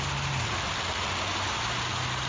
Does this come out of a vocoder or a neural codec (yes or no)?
no